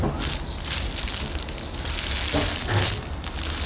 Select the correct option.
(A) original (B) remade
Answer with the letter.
A